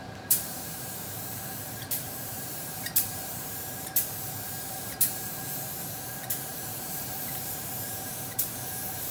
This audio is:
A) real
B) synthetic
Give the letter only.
B